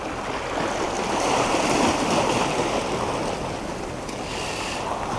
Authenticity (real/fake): real